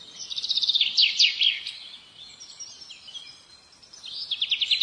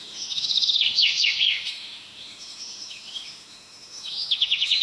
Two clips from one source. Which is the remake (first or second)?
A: second